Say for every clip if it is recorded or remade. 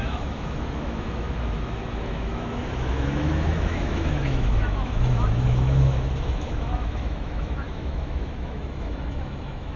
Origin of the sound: remade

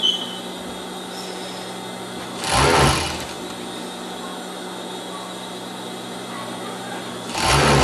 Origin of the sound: recorded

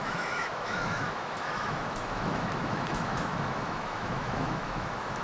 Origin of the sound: remade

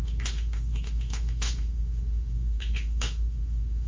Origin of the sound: remade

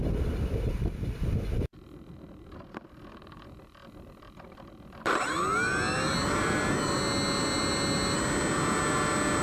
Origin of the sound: recorded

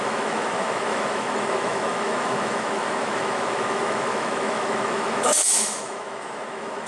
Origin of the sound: remade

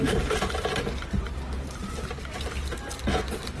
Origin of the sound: recorded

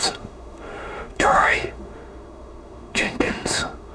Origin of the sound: remade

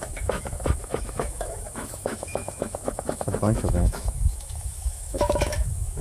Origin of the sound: remade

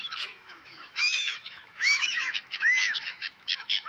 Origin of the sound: remade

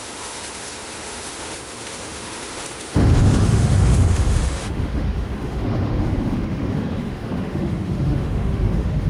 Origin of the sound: remade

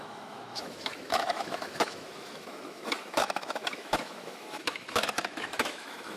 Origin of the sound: remade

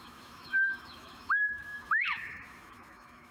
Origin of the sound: remade